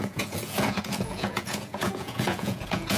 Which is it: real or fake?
fake